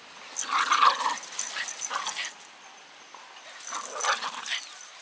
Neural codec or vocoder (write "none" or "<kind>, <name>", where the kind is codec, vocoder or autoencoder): none